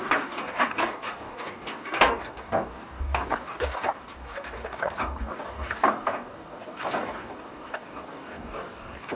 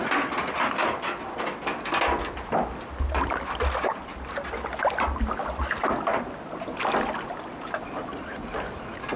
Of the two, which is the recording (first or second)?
second